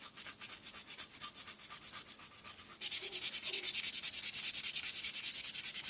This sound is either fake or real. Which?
real